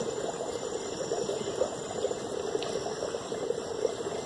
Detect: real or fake real